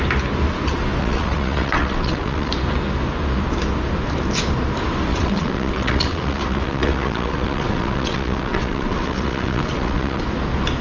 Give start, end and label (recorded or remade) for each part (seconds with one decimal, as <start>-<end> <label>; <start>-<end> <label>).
0.0-1.0 recorded; 1.0-2.5 remade; 2.5-5.1 recorded; 5.1-10.2 remade; 10.2-10.8 recorded